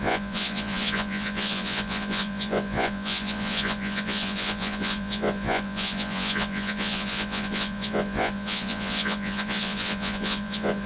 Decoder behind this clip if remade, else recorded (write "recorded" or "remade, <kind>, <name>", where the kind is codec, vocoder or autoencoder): remade, vocoder, Vocos